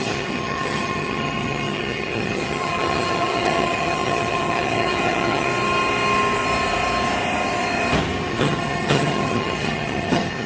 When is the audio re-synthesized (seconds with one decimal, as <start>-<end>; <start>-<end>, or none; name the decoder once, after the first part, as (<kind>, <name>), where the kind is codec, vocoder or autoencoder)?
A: 0.0-5.5 (vocoder, HiFi-GAN); 8.3-10.5